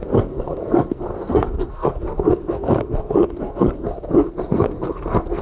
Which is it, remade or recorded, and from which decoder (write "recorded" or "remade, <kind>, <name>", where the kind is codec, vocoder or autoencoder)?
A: remade, codec, SNAC